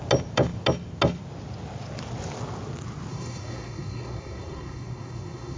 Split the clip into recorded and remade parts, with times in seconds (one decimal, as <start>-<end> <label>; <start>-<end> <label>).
0.0-3.1 recorded; 3.1-5.6 remade